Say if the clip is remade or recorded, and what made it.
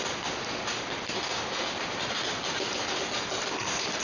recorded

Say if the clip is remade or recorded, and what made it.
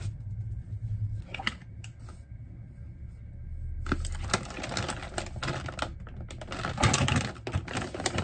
recorded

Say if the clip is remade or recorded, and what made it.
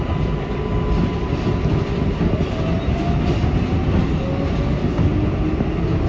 recorded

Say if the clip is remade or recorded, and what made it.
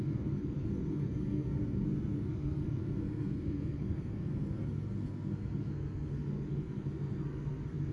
remade, codec, SNAC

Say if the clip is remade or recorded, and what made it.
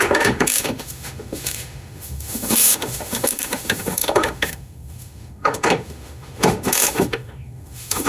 remade, autoencoder, DAC-VAE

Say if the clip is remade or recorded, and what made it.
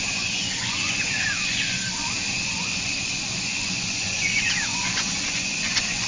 remade, vocoder, Vocos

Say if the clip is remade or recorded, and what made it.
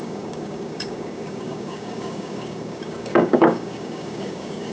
remade, codec, DAC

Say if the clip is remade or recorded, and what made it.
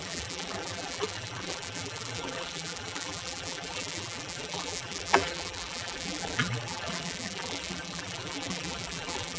remade, vocoder, BigVGAN v2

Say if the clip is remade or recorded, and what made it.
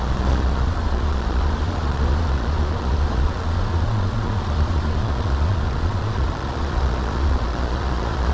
remade, vocoder, Vocos